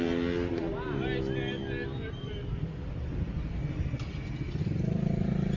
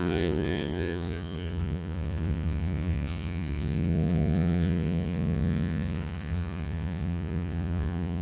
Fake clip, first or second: second